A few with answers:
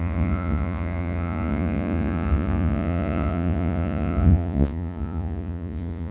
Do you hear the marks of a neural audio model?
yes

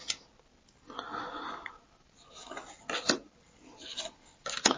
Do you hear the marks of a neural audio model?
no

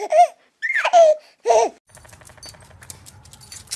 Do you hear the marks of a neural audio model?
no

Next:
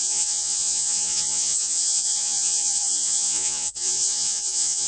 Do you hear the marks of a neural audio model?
yes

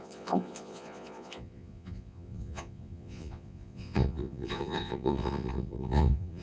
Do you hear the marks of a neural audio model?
yes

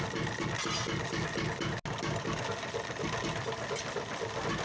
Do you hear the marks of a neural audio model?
no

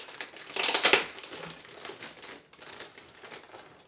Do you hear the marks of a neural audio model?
no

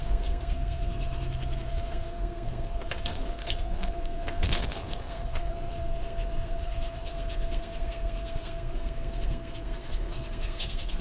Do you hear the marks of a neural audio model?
yes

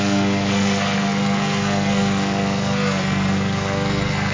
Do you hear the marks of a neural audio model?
yes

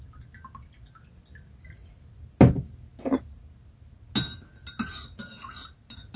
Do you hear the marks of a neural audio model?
no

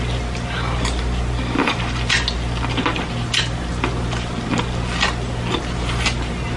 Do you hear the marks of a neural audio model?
no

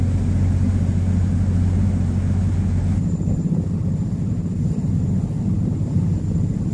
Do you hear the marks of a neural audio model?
no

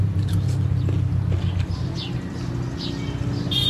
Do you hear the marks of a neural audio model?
no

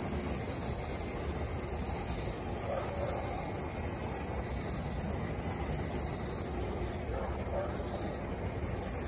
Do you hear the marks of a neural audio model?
no